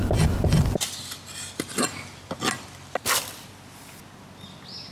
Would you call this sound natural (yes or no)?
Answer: yes